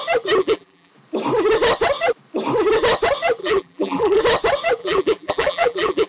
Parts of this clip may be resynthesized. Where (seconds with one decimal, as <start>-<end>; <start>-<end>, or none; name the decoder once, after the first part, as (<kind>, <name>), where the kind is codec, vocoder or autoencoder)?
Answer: 0.4-0.9 (vocoder, BigVGAN v2); 3.4-4.2; 4.8-6.1